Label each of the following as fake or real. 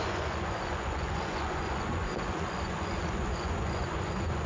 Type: fake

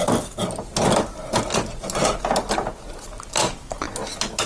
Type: real